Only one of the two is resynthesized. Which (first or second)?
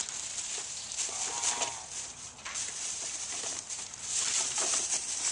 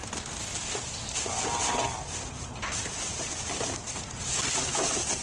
first